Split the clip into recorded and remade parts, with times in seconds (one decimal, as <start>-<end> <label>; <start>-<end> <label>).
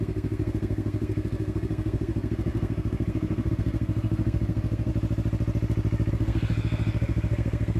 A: 0.0-4.9 remade; 4.9-6.1 recorded; 6.1-7.8 remade